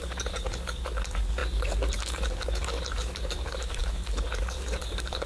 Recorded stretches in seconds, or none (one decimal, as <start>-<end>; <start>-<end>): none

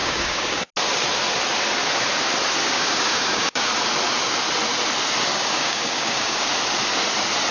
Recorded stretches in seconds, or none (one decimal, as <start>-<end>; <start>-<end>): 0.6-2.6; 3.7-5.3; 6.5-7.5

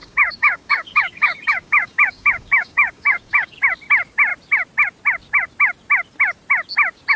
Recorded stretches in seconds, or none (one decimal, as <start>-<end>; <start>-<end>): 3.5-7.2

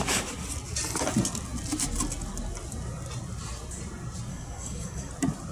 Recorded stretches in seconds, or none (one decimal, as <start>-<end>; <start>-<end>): 0.0-4.3; 5.1-5.5

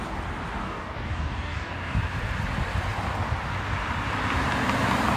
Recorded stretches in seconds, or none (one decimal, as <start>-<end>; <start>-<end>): 0.0-0.6; 2.0-5.2

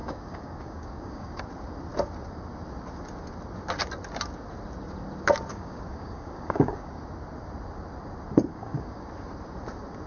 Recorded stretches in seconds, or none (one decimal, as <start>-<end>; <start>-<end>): 1.4-5.5; 7.0-8.5; 9.1-10.1

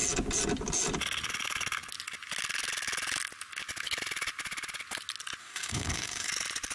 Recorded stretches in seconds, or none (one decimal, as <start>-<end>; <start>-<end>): 0.0-5.4; 6.3-6.7